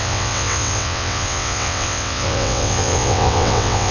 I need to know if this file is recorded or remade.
remade